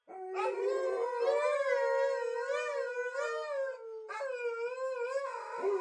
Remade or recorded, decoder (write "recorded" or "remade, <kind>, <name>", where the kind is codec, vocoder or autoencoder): recorded